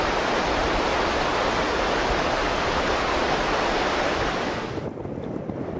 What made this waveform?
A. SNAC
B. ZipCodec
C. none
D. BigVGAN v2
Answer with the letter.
C